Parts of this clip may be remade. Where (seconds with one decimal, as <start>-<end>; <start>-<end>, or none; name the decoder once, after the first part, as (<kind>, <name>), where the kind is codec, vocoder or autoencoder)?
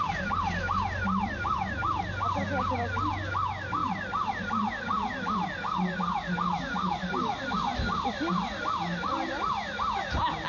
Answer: none